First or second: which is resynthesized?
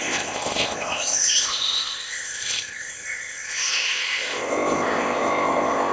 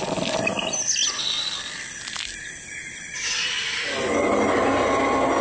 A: first